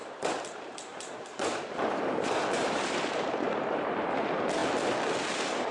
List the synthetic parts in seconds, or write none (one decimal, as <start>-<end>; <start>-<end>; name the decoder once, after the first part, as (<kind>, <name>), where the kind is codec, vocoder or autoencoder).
0.0-4.6 (vocoder, BigVGAN v2); 5.2-5.7